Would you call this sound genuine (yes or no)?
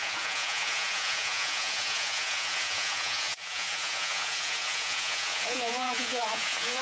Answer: no